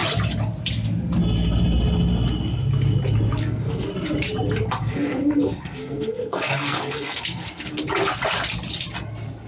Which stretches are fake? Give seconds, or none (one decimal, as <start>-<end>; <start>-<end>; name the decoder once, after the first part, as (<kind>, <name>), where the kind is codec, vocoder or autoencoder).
3.4-3.9 (codec, SNAC); 4.8-7.7